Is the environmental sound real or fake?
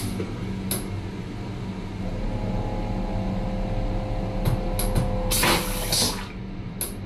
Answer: real